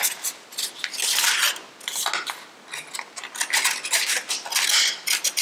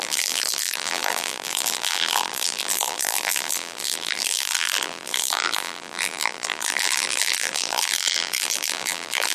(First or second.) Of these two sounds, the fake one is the second